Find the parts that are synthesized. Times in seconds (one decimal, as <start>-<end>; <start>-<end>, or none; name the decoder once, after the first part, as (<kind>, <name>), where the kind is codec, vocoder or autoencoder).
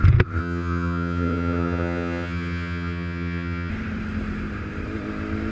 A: 0.4-3.7 (vocoder, HiFi-GAN)